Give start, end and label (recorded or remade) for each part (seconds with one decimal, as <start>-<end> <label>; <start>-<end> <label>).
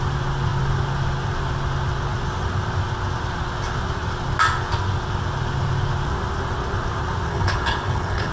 0.0-7.3 recorded; 7.3-8.3 remade